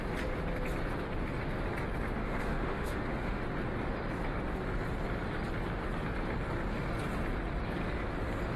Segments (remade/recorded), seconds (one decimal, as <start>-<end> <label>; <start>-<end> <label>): 0.0-2.2 recorded; 2.2-3.4 remade; 3.4-8.6 recorded